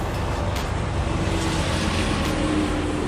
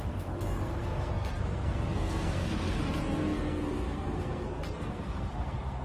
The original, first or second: first